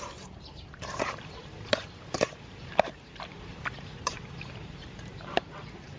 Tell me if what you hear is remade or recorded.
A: remade